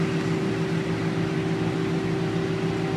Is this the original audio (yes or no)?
yes